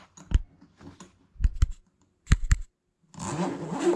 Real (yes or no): yes